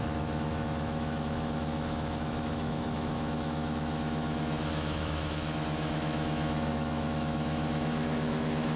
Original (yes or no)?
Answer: no